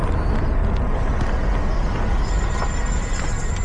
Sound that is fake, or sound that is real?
real